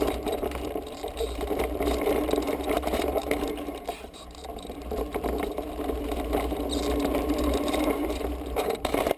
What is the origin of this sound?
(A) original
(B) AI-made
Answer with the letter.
B